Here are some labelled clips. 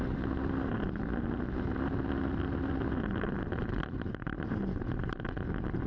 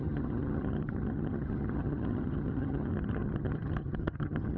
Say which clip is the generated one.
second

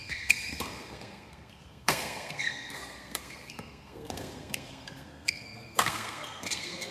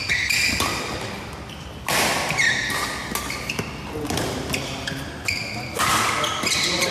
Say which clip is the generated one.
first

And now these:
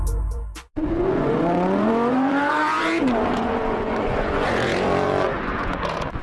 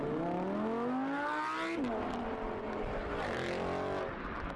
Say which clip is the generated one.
first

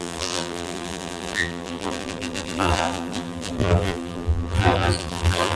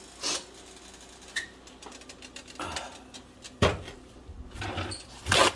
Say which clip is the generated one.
first